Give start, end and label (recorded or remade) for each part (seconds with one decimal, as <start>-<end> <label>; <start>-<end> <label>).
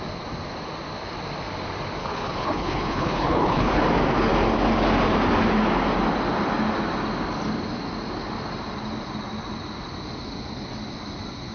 0.0-2.0 recorded; 2.0-3.8 remade; 3.8-11.5 recorded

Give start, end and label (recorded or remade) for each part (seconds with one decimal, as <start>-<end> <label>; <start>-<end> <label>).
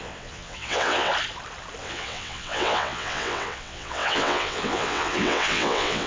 0.0-1.1 remade; 1.1-1.8 recorded; 1.8-6.1 remade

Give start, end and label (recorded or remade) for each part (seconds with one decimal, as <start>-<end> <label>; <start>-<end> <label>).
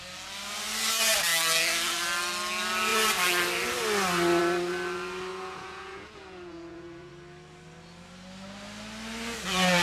0.0-5.3 recorded; 5.3-7.1 remade; 7.1-9.8 recorded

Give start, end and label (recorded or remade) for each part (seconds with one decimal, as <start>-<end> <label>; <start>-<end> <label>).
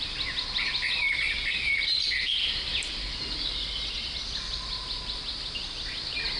0.0-6.4 recorded